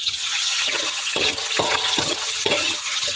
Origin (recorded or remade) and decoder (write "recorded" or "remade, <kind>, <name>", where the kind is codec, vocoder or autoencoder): remade, vocoder, HiFi-GAN